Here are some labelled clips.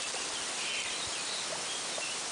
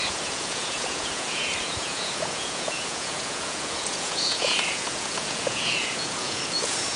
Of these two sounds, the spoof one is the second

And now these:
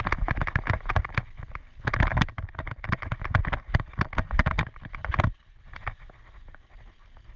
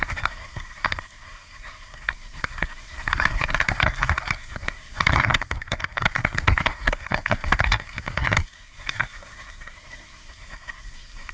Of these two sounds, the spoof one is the second